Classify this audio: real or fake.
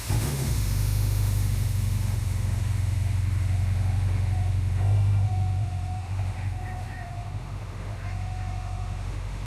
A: fake